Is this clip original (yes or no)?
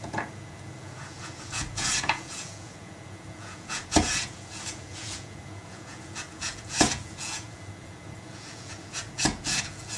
no